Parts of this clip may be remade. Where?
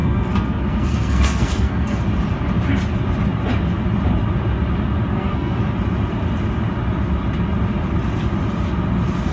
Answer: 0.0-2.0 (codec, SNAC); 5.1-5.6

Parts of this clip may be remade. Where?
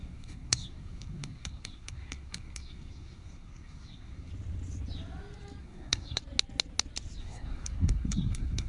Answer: 0.0-4.3 (codec, SNAC); 5.6-6.2; 7.2-8.7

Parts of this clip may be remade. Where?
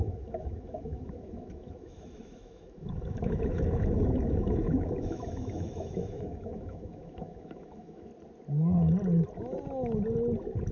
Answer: 0.0-8.1 (autoencoder, DAC-VAE)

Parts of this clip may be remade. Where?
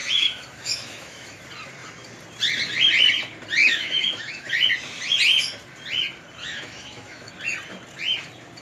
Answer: 0.0-1.4 (autoencoder, DAC-VAE); 3.6-4.5; 6.4-7.3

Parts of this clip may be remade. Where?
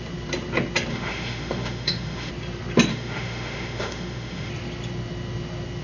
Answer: 0.9-2.3 (autoencoder, DAC-VAE); 2.9-4.5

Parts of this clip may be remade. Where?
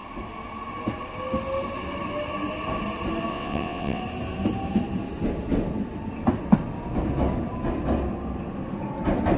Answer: 3.3-4.0 (vocoder, WaveNeXt)